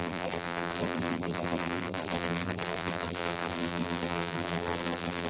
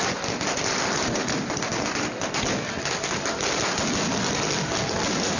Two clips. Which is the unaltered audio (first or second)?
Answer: second